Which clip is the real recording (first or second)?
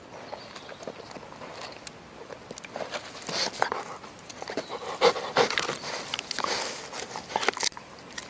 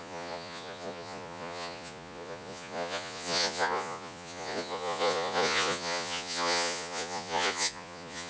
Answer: first